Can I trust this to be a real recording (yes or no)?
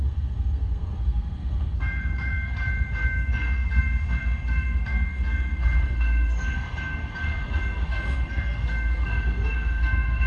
no